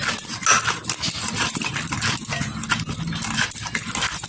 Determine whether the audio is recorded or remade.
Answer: recorded